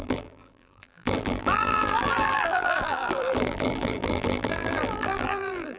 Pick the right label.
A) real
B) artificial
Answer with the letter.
B